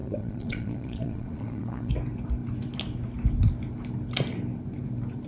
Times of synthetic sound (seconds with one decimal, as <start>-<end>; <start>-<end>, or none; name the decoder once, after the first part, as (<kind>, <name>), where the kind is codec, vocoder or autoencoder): 0.0-1.9 (vocoder, Vocos)